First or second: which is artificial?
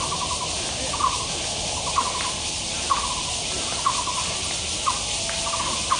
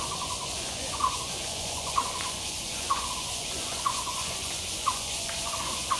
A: second